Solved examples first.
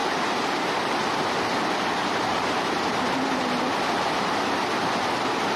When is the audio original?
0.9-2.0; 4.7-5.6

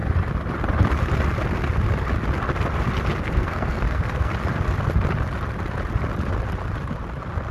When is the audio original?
0.0-3.2; 4.3-7.5

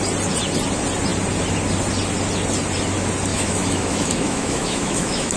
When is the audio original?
0.0-3.3

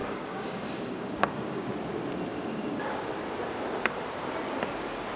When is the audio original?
1.7-2.3; 3.1-5.2

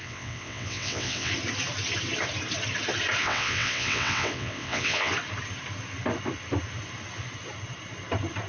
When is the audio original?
1.3-3.2; 5.1-8.5

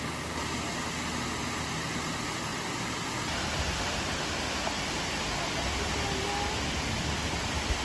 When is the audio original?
0.0-2.5; 3.3-7.8

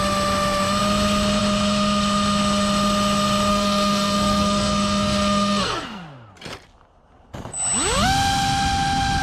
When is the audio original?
0.0-3.5; 6.0-9.2

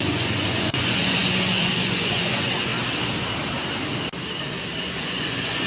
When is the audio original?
2.7-4.8